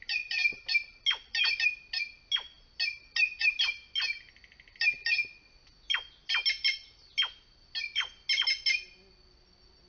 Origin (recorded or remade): recorded